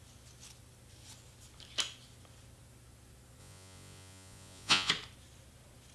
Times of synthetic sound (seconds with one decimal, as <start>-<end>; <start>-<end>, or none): 3.4-4.9